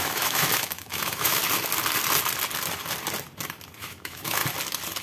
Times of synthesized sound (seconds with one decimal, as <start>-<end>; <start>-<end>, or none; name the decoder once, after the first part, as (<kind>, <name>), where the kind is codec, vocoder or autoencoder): 0.0-1.4 (autoencoder, DAC-VAE); 3.8-4.4